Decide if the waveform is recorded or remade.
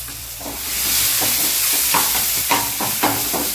remade